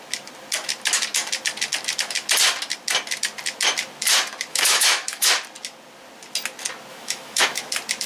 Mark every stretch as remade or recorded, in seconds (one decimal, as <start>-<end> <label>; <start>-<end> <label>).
0.0-4.5 recorded; 4.5-5.3 remade; 5.3-6.9 recorded; 6.9-7.6 remade; 7.6-8.1 recorded